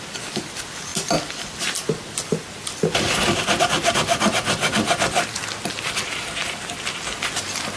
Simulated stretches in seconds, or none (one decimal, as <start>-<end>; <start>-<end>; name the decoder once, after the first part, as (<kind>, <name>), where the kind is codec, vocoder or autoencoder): none